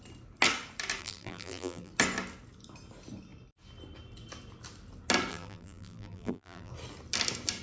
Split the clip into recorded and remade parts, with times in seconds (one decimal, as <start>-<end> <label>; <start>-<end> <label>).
0.0-1.0 recorded; 1.0-1.9 remade; 1.9-5.3 recorded; 5.3-6.7 remade; 6.7-7.6 recorded